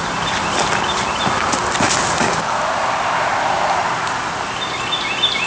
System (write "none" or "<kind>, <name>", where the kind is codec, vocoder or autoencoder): none